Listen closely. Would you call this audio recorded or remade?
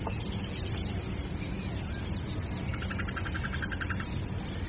recorded